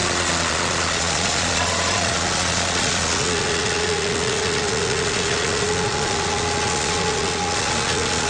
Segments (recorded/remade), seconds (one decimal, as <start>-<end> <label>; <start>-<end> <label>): 0.0-8.3 remade